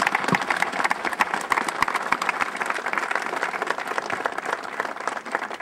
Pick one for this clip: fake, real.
real